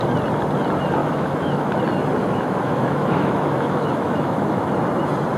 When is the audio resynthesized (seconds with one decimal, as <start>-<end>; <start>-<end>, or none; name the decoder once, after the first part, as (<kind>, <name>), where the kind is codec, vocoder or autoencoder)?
1.0-1.8 (autoencoder, DAC-VAE); 2.2-4.7